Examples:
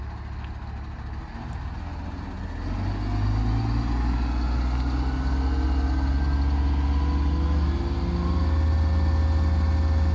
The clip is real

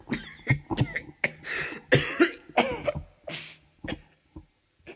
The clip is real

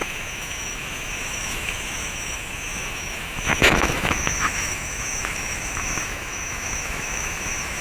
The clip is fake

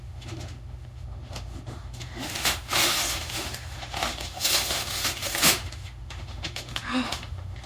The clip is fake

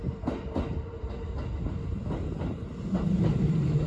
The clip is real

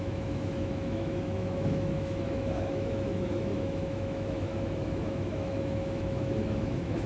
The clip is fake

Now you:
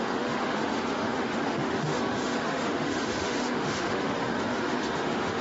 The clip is fake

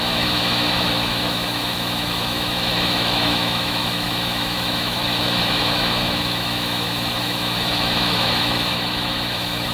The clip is fake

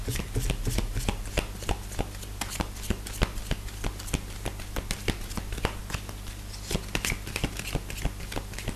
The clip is real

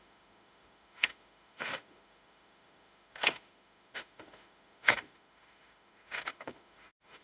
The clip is fake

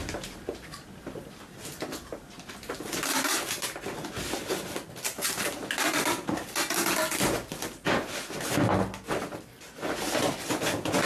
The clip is real